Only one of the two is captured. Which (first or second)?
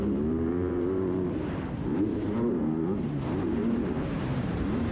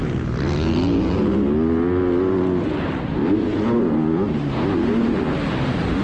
second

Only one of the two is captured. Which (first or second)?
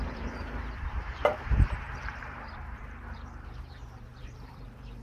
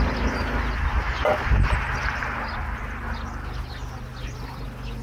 second